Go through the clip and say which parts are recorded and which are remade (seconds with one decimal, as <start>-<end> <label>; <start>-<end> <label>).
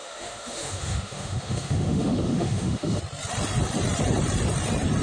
0.0-3.0 remade; 3.0-5.0 recorded